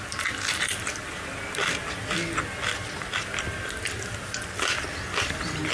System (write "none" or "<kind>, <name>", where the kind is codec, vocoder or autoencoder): vocoder, BigVGAN v2